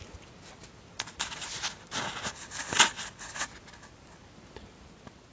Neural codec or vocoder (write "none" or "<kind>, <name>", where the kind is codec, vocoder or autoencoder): none